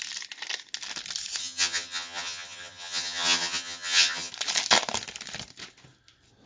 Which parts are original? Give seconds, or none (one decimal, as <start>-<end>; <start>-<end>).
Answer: 0.0-1.4; 4.3-6.5